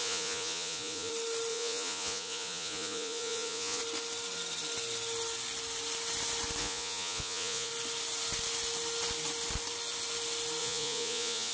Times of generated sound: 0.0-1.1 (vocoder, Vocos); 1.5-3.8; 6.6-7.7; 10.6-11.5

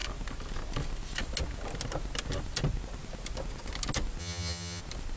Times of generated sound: 4.2-4.8 (vocoder, HiFi-GAN)

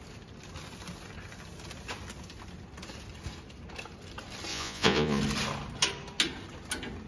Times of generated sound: 4.5-5.2 (vocoder, Vocos)

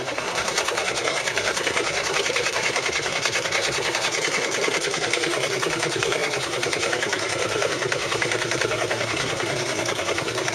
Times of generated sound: 0.0-10.5 (codec, SNAC)

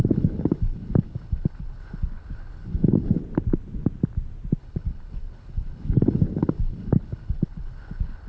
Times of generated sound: 0.0-3.2 (codec, HILCodec); 4.6-8.3

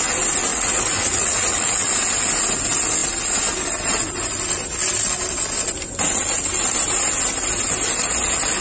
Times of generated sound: 0.5-1.9 (vocoder, Vocos)

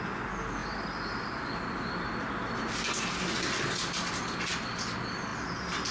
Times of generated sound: none

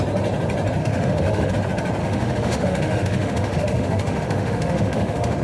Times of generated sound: 0.8-1.5 (autoencoder, DAC-VAE); 2.0-5.4